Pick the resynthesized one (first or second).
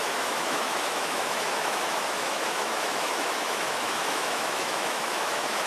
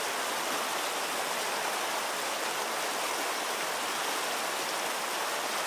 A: first